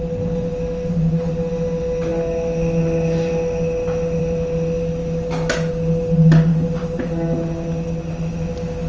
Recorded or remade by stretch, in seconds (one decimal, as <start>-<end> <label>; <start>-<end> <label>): 0.0-8.9 recorded

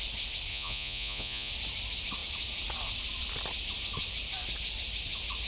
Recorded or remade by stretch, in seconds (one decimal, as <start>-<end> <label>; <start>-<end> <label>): 0.0-0.5 recorded; 0.5-1.5 remade; 1.5-5.5 recorded